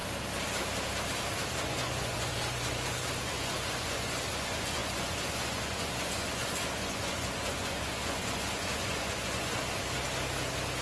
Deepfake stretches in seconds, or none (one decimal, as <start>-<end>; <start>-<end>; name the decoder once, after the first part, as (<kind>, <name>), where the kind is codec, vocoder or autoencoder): 1.5-9.6 (vocoder, Vocos)